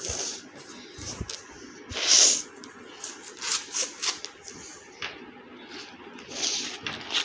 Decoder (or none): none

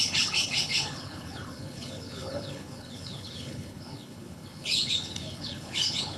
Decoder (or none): codec, HILCodec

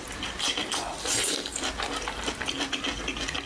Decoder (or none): none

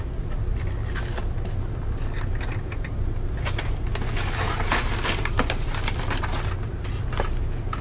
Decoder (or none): none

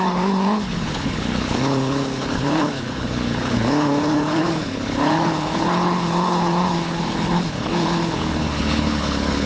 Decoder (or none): codec, HILCodec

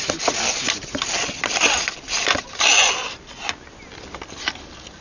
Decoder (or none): none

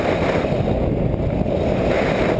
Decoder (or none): none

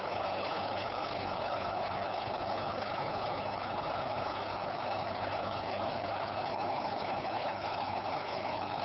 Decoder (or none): codec, HILCodec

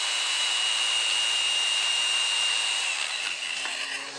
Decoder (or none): none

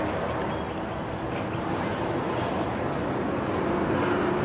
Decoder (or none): none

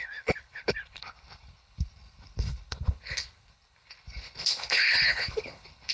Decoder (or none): codec, HILCodec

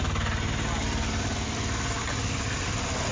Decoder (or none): none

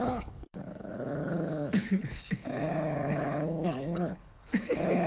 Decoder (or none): codec, HILCodec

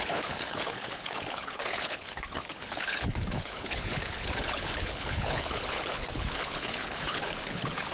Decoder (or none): codec, HILCodec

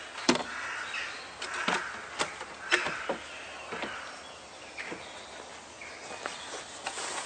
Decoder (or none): none